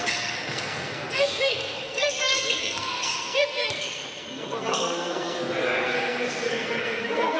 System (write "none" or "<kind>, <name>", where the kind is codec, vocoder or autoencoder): codec, SNAC